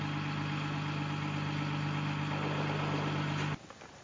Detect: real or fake real